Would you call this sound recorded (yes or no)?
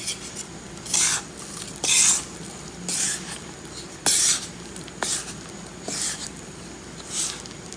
yes